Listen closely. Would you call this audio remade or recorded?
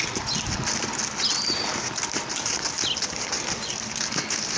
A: recorded